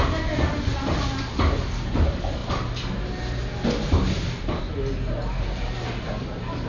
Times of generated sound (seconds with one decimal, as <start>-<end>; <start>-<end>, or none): none